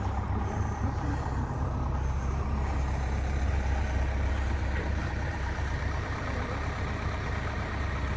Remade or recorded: remade